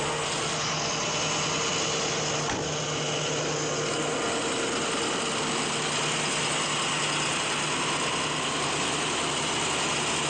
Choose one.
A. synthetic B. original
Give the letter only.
B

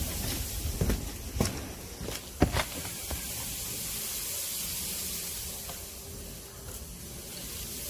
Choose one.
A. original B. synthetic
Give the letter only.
A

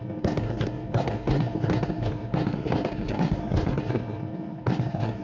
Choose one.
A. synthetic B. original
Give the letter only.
A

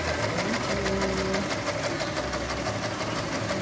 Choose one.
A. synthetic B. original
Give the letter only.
B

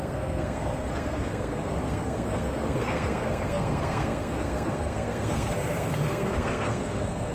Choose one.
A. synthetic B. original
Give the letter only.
A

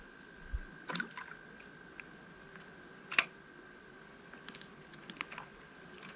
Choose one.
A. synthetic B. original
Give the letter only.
B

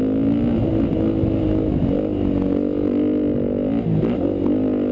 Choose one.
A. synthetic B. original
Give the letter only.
B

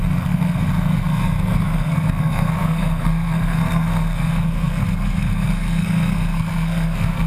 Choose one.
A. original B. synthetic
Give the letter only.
B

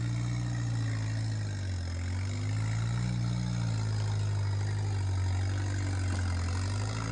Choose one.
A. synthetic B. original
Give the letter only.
B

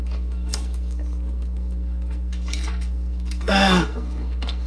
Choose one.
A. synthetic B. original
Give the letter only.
A